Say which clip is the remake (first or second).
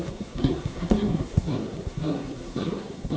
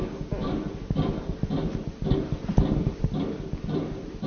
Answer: first